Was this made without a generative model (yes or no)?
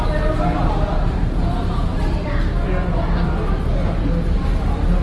yes